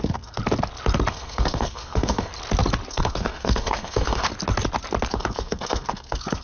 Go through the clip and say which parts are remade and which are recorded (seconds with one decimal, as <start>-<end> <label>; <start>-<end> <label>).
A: 0.0-0.4 remade; 0.4-1.1 recorded; 1.1-2.3 remade; 2.3-2.9 recorded; 2.9-4.3 remade; 4.3-5.1 recorded; 5.1-6.4 remade